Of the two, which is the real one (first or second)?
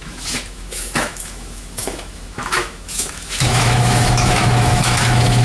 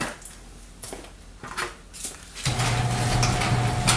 second